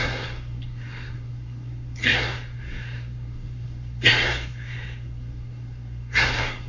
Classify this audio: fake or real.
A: fake